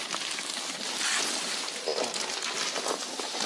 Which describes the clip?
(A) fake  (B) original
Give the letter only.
B